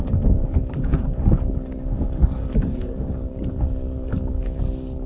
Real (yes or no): no